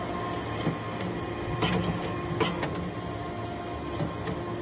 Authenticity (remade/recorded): recorded